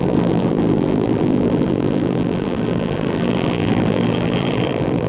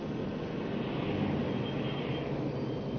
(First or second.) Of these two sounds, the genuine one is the second